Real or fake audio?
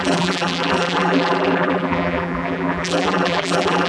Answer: fake